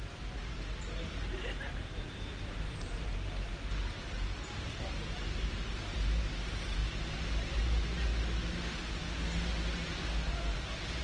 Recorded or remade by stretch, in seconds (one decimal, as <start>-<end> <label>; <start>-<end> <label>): 0.0-3.5 remade; 3.5-4.0 recorded; 4.0-6.8 remade; 6.8-7.5 recorded; 7.5-8.1 remade; 8.1-10.3 recorded; 10.3-11.0 remade